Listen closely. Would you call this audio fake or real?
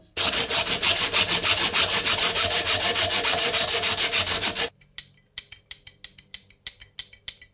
real